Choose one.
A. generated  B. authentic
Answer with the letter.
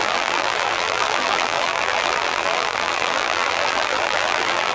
A